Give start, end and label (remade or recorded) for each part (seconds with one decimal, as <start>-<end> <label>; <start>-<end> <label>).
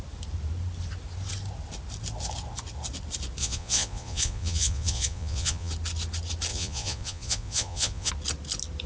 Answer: 0.0-3.4 recorded; 3.4-5.7 remade; 5.7-6.5 recorded; 6.5-8.1 remade; 8.1-8.9 recorded